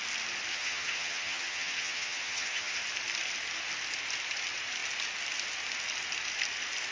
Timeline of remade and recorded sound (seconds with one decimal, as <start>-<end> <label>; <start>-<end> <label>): 0.0-0.5 recorded; 0.5-2.8 remade; 2.8-6.9 recorded